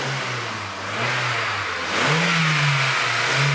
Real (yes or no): yes